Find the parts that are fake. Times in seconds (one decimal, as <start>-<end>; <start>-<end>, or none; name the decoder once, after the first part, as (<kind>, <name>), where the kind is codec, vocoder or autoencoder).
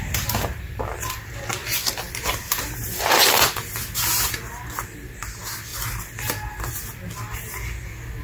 none